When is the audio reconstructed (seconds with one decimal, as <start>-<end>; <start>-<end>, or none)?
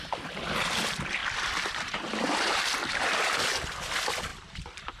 1.2-3.0; 4.3-5.0